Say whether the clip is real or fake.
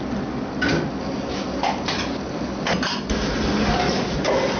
real